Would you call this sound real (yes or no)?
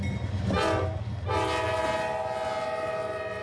yes